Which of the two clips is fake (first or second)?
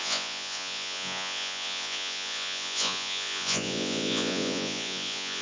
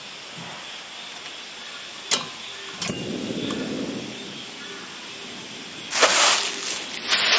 first